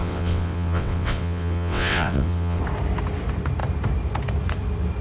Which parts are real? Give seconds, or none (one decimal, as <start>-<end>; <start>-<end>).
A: 2.6-5.0